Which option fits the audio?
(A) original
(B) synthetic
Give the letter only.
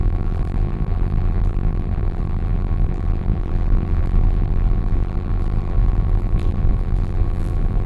B